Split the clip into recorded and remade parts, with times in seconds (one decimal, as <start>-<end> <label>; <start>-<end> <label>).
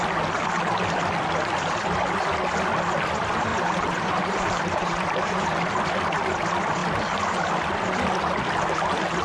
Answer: 0.0-3.5 recorded; 3.5-5.7 remade; 5.7-9.2 recorded